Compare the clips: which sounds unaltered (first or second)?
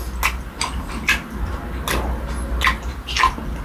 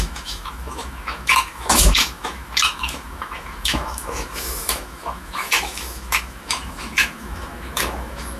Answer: first